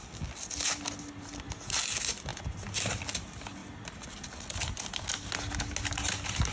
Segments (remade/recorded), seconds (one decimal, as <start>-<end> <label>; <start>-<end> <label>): 0.0-6.5 recorded